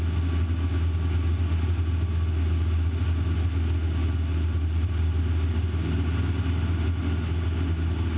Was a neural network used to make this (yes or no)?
no